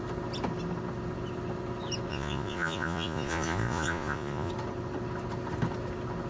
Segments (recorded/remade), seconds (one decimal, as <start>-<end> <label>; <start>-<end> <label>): 0.0-2.1 recorded; 2.1-4.5 remade; 4.5-6.3 recorded